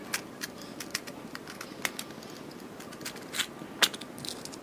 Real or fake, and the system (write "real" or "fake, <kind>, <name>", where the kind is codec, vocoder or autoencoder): real